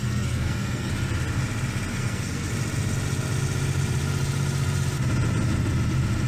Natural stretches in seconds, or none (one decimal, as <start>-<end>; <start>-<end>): 0.9-1.9; 2.5-6.3